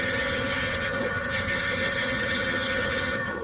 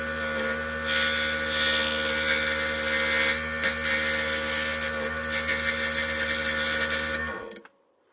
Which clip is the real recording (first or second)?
second